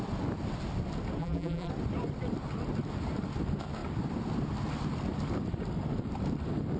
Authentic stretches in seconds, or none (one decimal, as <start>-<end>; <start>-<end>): 0.0-1.2; 1.7-6.8